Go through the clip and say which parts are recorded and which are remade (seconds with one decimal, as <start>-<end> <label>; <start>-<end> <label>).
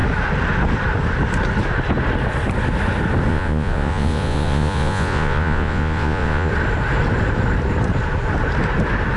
0.0-3.3 recorded; 3.3-6.5 remade; 6.5-9.2 recorded